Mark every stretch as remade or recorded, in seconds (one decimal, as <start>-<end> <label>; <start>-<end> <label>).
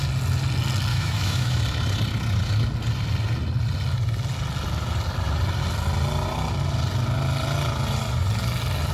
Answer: 0.0-0.9 recorded; 0.9-1.6 remade; 1.6-8.9 recorded